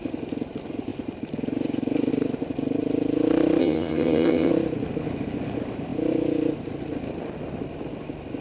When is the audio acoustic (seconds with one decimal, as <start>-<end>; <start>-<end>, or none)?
0.0-3.6; 4.5-8.4